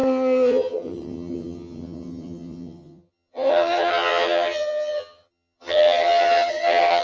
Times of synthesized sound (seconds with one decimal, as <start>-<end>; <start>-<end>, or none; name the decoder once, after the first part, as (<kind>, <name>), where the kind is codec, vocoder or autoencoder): 0.0-7.0 (vocoder, HiFi-GAN)

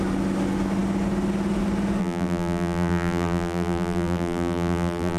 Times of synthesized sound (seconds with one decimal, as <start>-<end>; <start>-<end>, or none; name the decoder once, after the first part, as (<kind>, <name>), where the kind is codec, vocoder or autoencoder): 2.0-5.2 (vocoder, BigVGAN v2)

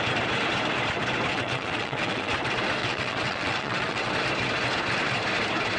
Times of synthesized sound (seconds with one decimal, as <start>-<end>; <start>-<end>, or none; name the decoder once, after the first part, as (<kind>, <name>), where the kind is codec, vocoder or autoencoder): 1.3-2.3 (vocoder, WaveNeXt); 2.8-4.1